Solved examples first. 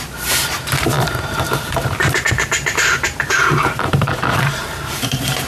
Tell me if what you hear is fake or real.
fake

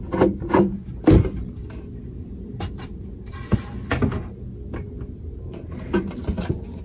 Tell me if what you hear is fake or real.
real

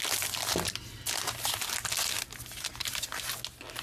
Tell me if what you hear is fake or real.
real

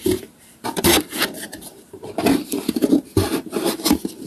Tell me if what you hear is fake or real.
fake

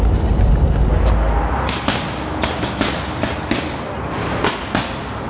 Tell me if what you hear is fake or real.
real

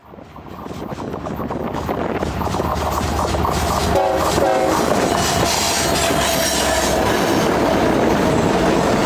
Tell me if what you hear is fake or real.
real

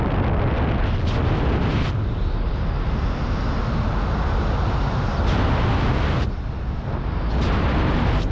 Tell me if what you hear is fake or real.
real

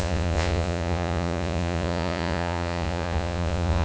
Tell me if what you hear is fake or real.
fake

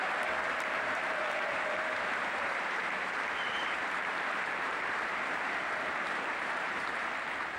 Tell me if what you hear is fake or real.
fake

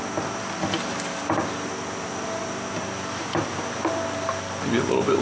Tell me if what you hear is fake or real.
real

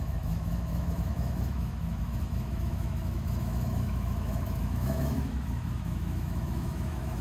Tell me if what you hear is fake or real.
fake